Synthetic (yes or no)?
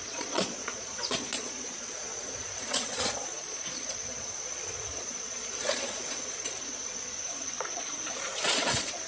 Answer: yes